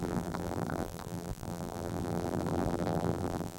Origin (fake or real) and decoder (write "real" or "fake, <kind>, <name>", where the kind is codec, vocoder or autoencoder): fake, vocoder, BigVGAN v2